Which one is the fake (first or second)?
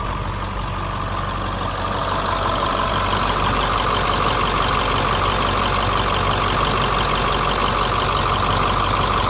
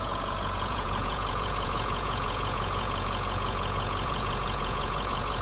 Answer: second